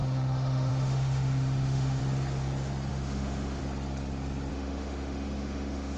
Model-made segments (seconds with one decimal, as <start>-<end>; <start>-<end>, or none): 0.0-2.0; 2.9-3.6; 4.5-6.0